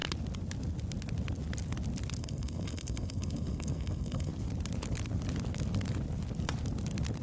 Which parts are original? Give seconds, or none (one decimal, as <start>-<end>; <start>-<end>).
0.0-2.2; 4.3-7.2